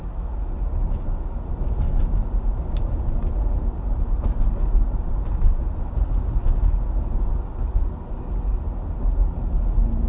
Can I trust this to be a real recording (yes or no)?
yes